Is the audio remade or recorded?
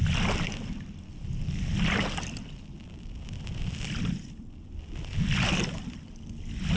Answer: recorded